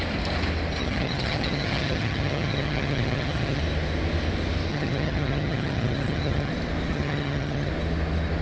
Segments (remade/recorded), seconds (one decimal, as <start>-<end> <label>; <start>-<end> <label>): 0.0-0.8 recorded; 0.8-3.6 remade; 3.6-4.7 recorded; 4.7-6.5 remade; 6.5-6.9 recorded; 6.9-7.7 remade; 7.7-8.4 recorded